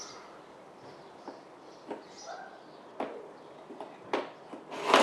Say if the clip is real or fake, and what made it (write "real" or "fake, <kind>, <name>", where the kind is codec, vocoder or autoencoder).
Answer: real